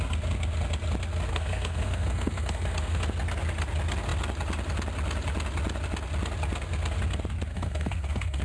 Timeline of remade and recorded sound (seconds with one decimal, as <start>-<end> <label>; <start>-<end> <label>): 0.0-1.3 recorded; 1.3-3.0 remade; 3.0-7.5 recorded; 7.5-8.4 remade